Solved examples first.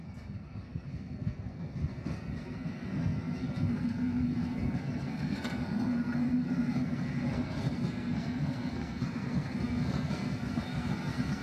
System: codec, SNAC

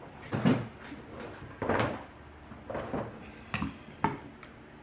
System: none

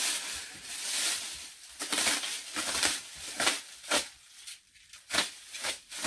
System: vocoder, BigVGAN v2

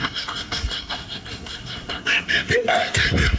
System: codec, SNAC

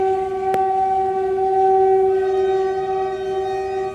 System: none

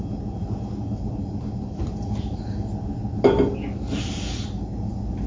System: none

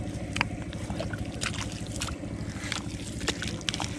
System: none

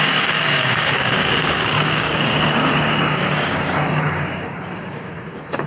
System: codec, DAC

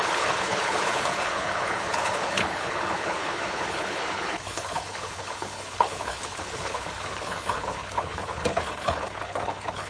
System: codec, HILCodec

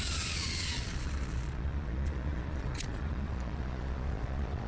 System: vocoder, Vocos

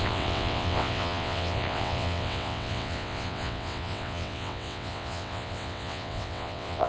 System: vocoder, WaveNeXt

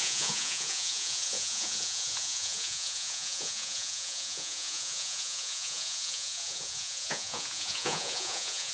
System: vocoder, Vocos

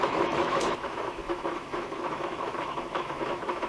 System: autoencoder, DAC-VAE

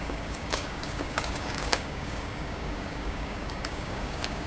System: codec, DAC